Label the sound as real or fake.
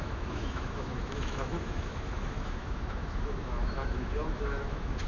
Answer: fake